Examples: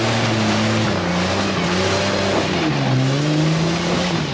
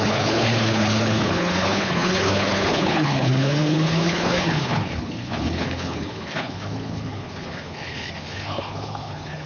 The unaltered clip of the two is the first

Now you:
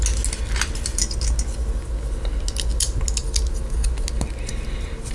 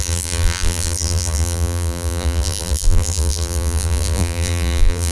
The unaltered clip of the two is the first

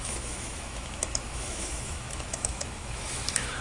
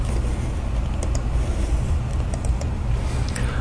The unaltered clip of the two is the second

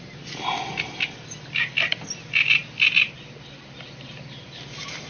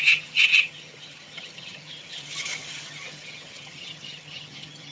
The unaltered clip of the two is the first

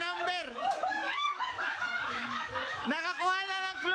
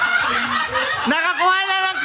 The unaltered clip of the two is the second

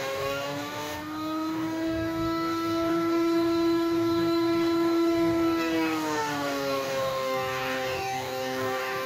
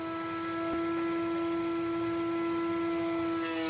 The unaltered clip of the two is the second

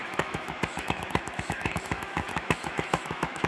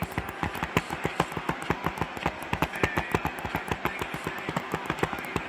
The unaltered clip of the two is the second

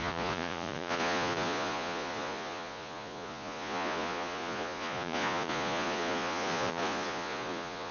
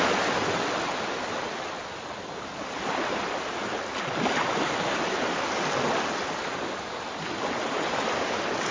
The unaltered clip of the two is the second